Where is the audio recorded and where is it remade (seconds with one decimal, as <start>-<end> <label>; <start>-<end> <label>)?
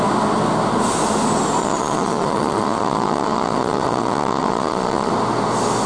0.0-1.6 recorded; 1.6-5.1 remade; 5.1-5.9 recorded